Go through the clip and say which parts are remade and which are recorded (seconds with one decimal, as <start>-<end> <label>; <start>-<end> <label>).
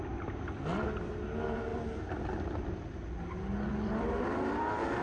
0.0-1.7 recorded; 1.7-2.3 remade; 2.3-3.7 recorded; 3.7-5.0 remade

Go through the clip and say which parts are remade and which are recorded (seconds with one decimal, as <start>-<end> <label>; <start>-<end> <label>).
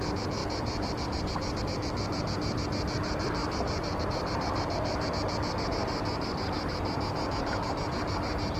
0.0-0.4 recorded; 0.4-1.6 remade; 1.6-3.4 recorded; 3.4-5.1 remade; 5.1-8.6 recorded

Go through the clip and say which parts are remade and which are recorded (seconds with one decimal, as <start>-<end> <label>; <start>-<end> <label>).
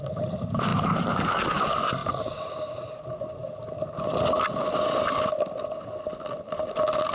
0.0-2.0 recorded; 2.0-2.9 remade; 2.9-7.1 recorded